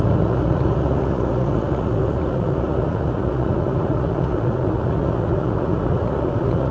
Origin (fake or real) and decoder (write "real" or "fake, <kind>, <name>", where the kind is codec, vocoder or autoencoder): fake, vocoder, Vocos